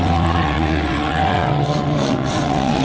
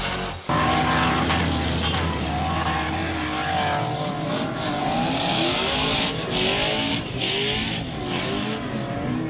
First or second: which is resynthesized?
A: first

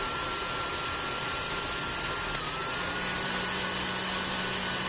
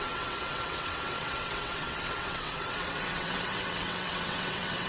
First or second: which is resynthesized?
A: second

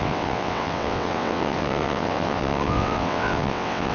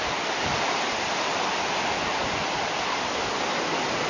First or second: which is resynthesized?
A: first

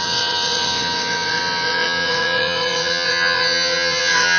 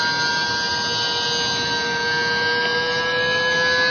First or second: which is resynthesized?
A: first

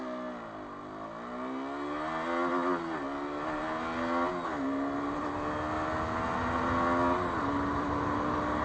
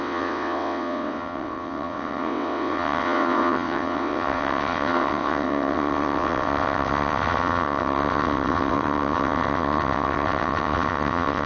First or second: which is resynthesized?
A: second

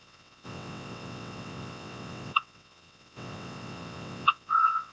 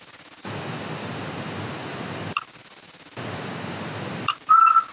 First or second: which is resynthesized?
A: first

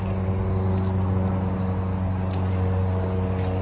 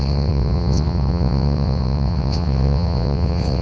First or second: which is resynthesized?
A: second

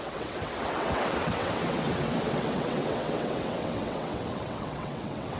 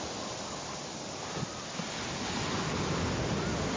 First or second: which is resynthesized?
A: first